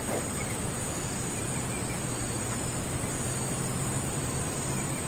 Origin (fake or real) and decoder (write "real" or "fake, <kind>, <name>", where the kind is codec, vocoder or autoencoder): real